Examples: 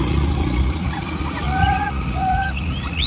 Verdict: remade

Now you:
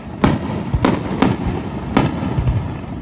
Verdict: recorded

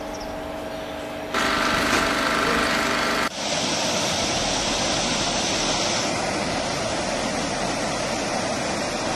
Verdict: recorded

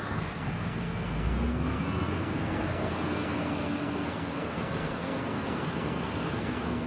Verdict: remade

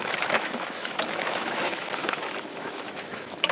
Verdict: remade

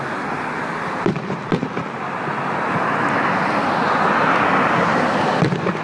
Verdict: recorded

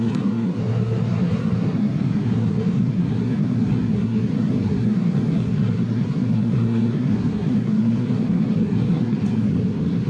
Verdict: remade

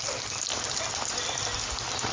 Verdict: recorded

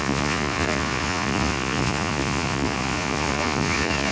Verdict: remade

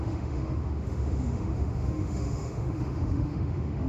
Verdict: remade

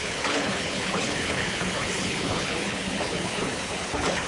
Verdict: remade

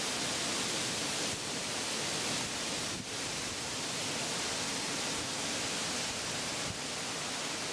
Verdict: recorded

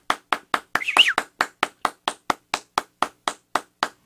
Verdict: recorded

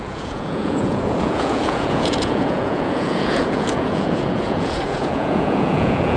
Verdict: remade